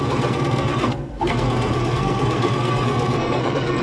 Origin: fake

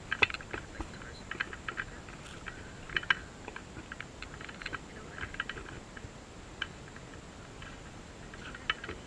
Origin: real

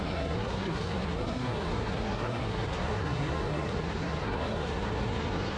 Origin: fake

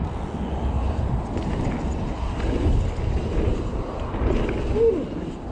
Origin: real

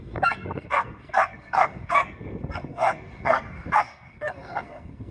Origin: fake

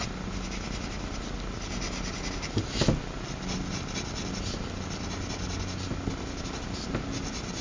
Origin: real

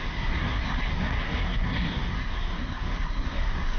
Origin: fake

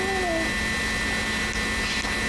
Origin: real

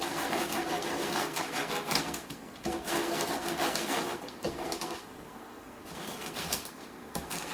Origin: fake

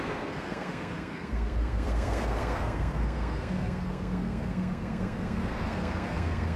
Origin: fake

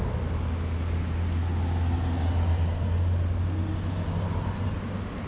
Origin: real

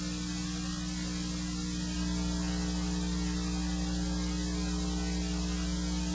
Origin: real